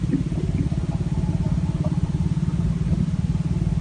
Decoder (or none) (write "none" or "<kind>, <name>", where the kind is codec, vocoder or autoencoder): none